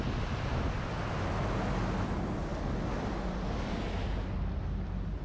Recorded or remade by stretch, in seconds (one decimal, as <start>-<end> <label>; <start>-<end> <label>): 0.0-5.2 recorded